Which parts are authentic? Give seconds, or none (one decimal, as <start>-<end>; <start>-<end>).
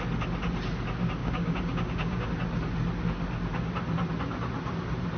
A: 0.0-1.2; 2.3-5.2